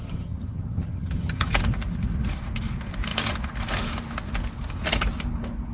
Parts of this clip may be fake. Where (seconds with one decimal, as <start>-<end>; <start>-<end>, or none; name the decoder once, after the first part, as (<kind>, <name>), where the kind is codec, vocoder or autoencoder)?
0.0-1.5 (vocoder, HiFi-GAN)